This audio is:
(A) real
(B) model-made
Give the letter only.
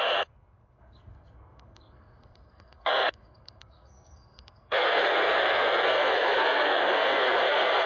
B